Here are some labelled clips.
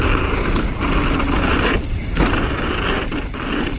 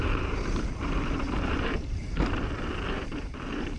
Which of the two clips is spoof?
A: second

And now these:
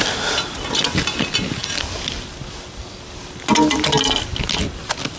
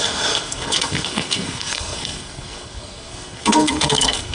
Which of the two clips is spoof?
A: second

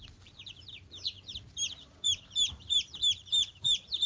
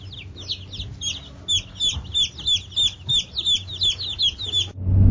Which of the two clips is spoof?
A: first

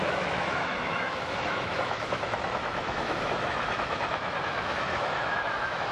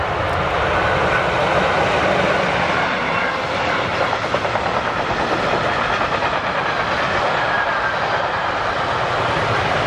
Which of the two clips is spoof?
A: first